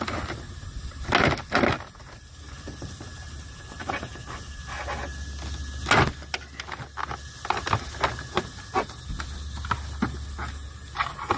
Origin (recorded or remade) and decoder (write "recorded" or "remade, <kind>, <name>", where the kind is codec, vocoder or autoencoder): recorded